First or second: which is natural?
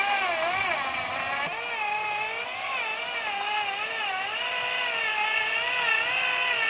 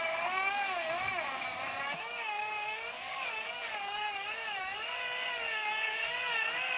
first